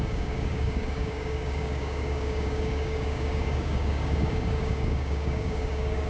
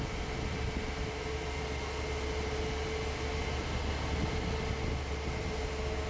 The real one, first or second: second